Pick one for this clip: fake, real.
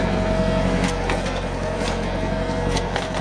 fake